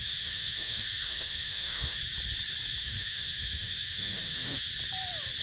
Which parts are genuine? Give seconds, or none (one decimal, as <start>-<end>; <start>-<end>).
2.0-2.8; 4.7-5.4